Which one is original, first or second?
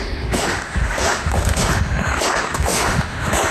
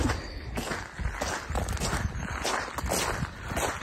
second